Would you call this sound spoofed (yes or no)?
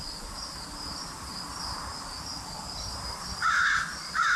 no